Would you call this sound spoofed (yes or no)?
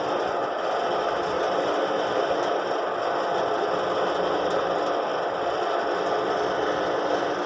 no